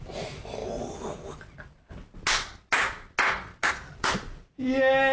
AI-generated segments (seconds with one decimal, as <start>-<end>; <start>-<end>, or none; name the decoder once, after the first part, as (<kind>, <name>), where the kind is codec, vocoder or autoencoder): none